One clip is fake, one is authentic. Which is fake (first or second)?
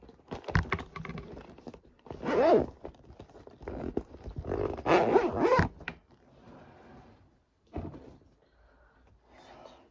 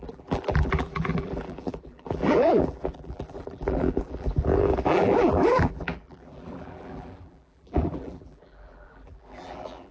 second